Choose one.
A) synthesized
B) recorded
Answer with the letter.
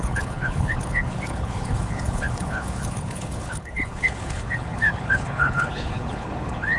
A